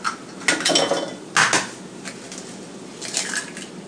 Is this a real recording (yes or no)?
yes